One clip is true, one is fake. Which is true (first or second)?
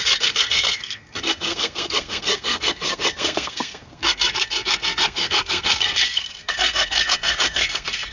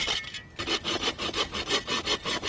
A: second